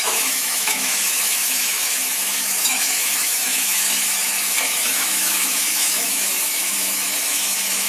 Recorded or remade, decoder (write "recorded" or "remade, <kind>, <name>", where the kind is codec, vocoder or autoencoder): remade, autoencoder, DAC-VAE